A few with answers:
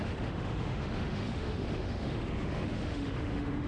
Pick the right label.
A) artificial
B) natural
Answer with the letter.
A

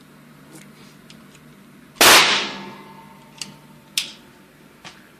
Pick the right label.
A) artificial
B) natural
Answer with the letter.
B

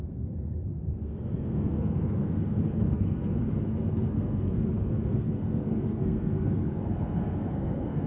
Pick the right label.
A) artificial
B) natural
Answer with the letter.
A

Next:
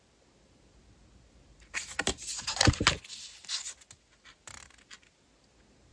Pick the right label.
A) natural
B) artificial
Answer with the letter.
A